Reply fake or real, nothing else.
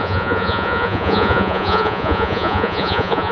fake